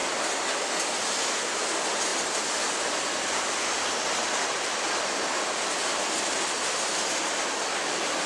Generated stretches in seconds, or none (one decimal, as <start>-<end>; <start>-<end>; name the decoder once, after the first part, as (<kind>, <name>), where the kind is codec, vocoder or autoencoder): none